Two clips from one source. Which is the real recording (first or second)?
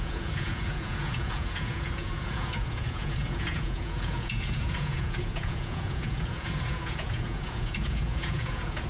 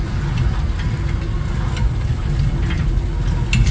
second